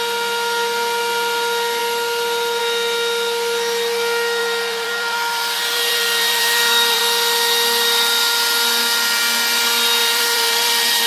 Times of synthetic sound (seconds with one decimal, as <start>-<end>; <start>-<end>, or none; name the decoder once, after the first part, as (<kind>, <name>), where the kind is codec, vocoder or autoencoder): 4.4-7.0 (vocoder, BigVGAN v2); 10.0-11.1